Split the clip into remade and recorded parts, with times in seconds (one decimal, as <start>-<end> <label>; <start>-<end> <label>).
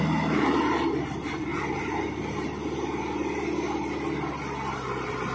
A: 0.0-5.3 recorded